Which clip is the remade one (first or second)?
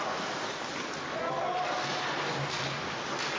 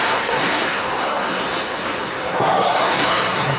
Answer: second